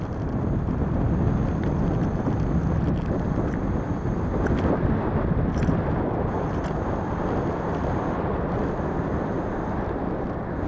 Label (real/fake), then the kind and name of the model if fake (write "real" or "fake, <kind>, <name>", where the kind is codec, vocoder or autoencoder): real